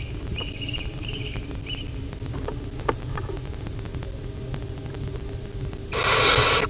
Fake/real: real